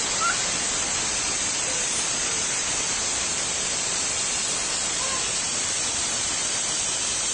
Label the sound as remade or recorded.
remade